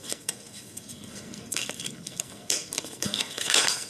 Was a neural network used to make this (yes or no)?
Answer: yes